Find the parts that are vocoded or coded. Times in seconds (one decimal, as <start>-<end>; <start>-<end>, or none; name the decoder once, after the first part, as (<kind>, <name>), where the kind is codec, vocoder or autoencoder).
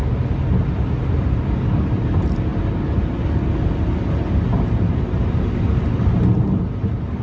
none